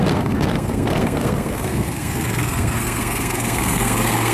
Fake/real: fake